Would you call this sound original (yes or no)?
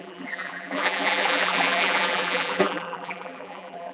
no